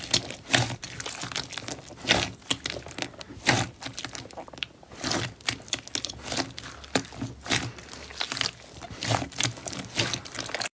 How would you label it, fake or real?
real